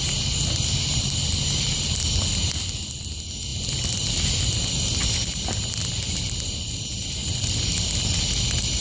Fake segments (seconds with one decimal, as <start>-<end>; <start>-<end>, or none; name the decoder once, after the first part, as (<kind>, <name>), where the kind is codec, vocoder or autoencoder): none